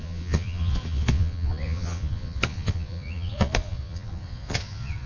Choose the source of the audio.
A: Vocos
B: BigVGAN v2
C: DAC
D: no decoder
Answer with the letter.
A